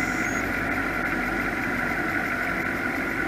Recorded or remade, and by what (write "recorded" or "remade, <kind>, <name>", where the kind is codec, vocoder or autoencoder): recorded